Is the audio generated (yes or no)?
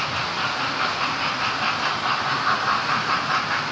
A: no